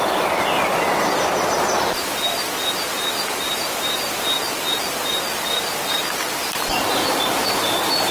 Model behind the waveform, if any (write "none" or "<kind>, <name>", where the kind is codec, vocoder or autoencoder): none